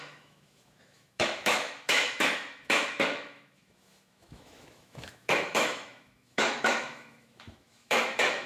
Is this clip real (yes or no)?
no